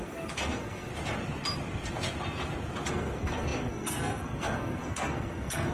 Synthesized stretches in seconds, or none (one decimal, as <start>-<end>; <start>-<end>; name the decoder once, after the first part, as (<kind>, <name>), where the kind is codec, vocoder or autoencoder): 0.0-0.9 (codec, SNAC); 2.9-5.7